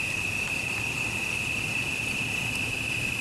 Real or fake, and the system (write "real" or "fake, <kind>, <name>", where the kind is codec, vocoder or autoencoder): real